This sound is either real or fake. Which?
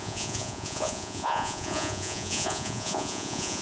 fake